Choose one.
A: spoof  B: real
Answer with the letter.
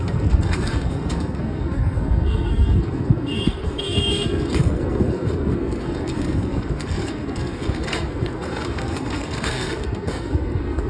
A